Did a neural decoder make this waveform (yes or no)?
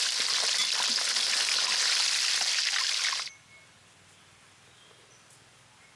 no